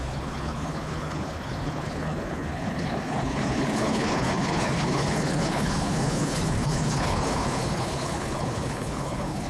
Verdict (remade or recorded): remade